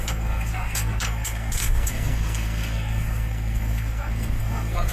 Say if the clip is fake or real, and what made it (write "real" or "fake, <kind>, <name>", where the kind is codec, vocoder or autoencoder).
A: fake, codec, SNAC